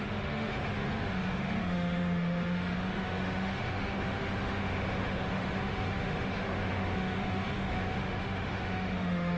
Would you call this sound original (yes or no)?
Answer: no